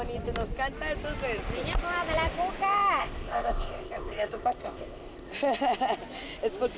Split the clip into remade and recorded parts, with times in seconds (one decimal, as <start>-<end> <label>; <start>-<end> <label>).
0.0-3.0 recorded; 3.0-5.3 remade; 5.3-6.8 recorded